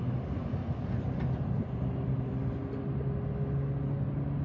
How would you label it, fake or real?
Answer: real